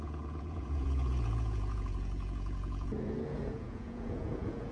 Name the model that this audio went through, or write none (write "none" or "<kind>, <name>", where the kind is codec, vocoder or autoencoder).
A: vocoder, Vocos